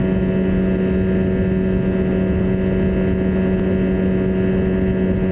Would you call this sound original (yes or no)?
yes